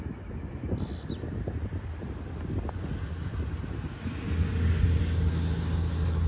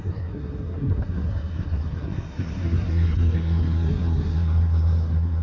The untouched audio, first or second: first